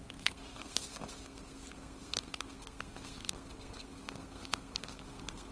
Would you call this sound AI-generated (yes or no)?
yes